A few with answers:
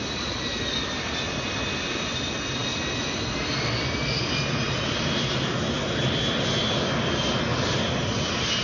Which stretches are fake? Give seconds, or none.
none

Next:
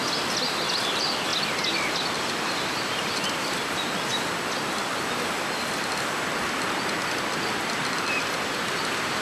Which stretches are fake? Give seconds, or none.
0.8-4.1 (vocoder, BigVGAN v2); 6.6-9.2

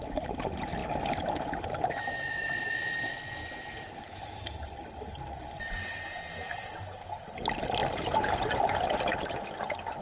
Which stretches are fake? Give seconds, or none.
7.8-8.3 (vocoder, BigVGAN v2)